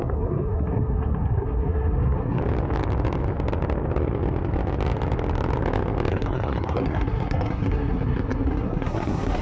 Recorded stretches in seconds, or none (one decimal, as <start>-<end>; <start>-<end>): 2.4-6.1